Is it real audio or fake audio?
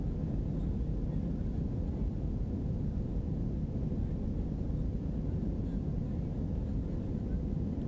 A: real